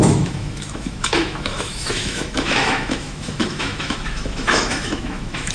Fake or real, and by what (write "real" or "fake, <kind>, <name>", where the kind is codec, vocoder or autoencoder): fake, autoencoder, DAC-VAE